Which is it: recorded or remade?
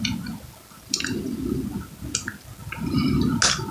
recorded